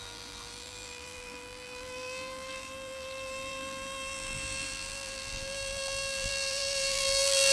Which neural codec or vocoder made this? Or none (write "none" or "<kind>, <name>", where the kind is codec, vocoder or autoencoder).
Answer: vocoder, BigVGAN v2